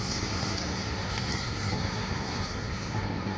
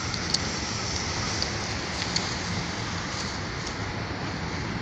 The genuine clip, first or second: second